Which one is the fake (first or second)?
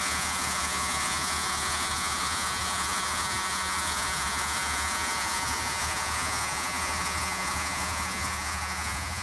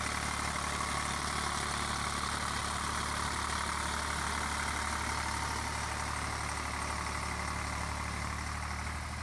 first